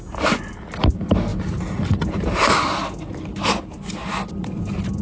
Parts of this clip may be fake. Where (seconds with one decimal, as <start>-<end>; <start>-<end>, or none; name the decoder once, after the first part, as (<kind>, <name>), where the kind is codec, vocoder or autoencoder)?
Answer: none